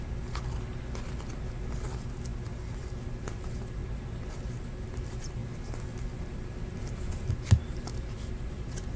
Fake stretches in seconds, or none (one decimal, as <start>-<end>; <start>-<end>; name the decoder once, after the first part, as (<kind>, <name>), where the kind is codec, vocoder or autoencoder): none